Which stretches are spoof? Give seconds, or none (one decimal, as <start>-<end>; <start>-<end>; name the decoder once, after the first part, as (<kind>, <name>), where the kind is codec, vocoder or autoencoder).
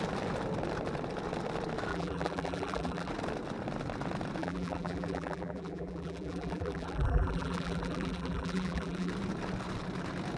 1.9-3.1 (vocoder, BigVGAN v2); 4.4-9.1